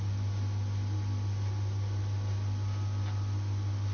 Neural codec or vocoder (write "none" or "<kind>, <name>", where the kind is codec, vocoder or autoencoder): none